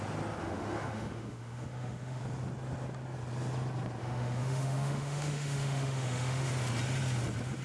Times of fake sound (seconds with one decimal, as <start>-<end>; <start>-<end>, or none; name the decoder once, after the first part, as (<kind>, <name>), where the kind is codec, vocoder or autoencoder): 0.4-2.2 (autoencoder, DAC-VAE); 4.0-6.5